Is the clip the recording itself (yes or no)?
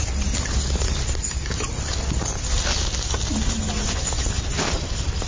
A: yes